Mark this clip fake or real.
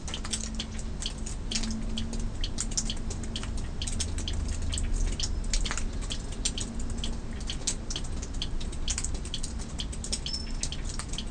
real